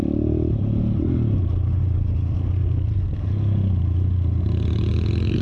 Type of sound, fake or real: real